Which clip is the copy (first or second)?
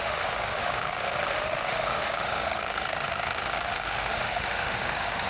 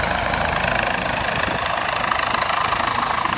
first